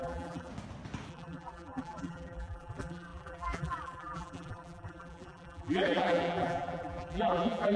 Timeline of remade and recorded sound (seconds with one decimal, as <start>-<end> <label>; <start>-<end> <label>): 0.0-0.5 remade; 0.5-1.1 recorded; 1.1-7.8 remade